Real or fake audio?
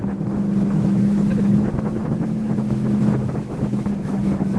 fake